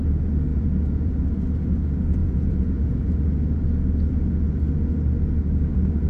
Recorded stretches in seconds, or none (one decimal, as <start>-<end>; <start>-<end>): 0.0-0.5; 1.1-2.2; 3.2-6.1